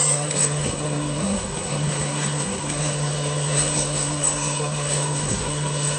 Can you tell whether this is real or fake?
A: fake